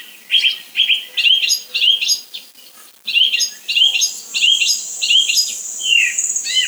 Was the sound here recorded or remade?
remade